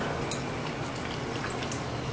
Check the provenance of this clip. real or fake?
real